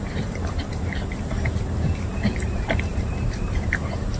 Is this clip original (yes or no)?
no